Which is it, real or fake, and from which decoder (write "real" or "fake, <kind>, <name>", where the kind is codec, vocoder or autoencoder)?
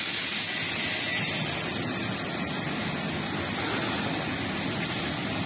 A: real